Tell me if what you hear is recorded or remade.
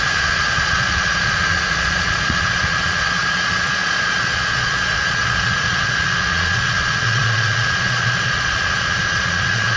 remade